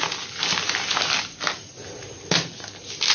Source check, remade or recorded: recorded